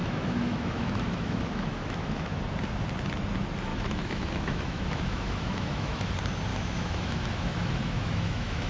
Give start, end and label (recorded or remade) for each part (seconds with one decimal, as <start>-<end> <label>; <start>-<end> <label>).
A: 0.0-2.4 remade; 2.4-3.7 recorded; 3.7-6.1 remade; 6.1-6.5 recorded; 6.5-8.7 remade